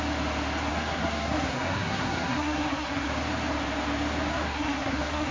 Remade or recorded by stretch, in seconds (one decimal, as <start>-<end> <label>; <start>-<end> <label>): 0.0-0.7 recorded; 0.7-3.1 remade; 3.1-4.3 recorded; 4.3-5.3 remade